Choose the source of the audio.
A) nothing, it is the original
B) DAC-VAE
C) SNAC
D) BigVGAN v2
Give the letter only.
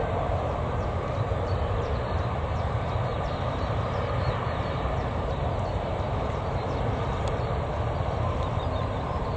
D